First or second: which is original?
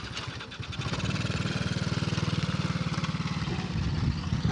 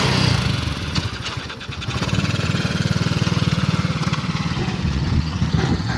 first